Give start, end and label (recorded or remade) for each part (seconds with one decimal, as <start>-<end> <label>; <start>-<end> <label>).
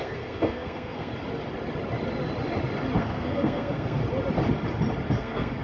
0.0-1.1 remade; 1.1-3.0 recorded; 3.0-4.0 remade; 4.0-5.1 recorded; 5.1-5.6 remade